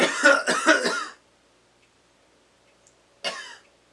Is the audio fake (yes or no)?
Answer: no